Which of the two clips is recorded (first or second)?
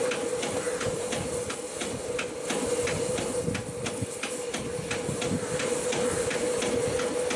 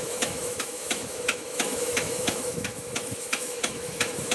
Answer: first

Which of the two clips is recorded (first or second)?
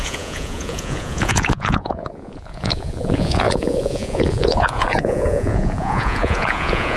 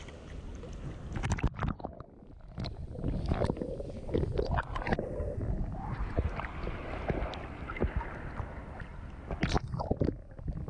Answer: second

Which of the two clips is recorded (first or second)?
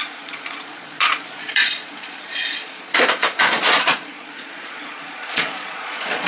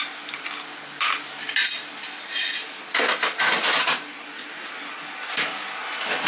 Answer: second